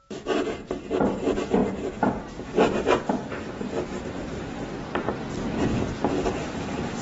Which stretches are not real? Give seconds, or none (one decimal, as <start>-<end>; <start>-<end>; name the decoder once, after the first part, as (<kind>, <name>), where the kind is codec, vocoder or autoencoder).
none